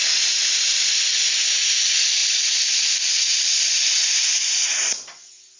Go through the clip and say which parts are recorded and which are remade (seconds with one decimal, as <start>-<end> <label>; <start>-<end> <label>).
0.0-5.6 recorded

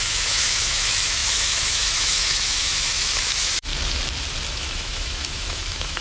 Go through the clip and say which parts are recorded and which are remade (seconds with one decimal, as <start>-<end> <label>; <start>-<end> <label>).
0.0-3.7 remade; 3.7-4.5 recorded; 4.5-6.0 remade

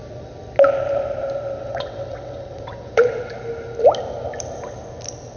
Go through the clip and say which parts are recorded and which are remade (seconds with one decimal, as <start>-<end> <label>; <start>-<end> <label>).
0.0-1.6 recorded; 1.6-3.3 remade; 3.3-5.4 recorded

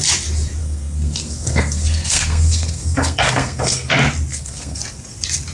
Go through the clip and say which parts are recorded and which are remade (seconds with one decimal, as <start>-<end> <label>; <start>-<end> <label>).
0.0-0.6 recorded; 0.6-3.9 remade; 3.9-4.3 recorded; 4.3-4.8 remade; 4.8-5.5 recorded